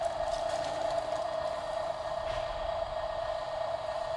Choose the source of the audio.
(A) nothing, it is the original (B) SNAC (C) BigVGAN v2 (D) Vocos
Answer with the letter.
C